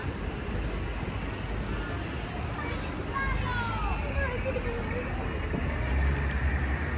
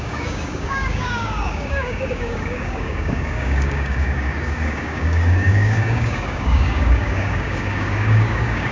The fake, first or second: second